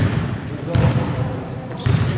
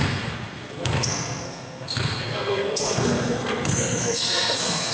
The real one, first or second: first